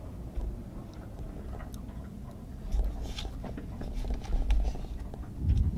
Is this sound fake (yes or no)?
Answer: no